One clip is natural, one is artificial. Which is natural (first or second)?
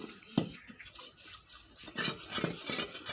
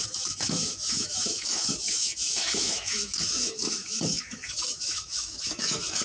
first